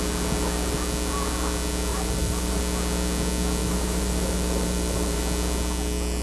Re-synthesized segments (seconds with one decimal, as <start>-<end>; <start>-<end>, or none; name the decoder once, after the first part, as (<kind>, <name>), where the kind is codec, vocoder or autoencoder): 1.9-2.6 (vocoder, BigVGAN v2); 3.6-5.2